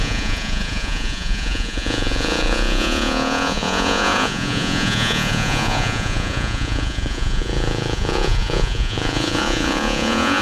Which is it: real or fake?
fake